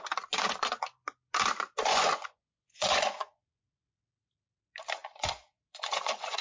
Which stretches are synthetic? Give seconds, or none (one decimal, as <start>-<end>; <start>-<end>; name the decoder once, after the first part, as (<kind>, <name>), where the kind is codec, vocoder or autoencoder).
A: 1.8-3.9 (vocoder, Vocos); 5.0-6.4